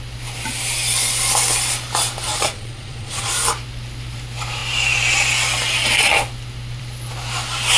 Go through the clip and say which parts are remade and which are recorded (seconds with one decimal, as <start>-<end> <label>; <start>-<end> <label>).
0.0-2.3 recorded; 2.3-3.3 remade; 3.3-7.8 recorded